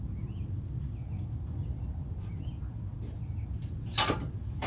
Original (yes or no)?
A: yes